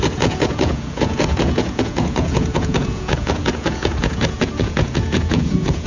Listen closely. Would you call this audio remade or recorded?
remade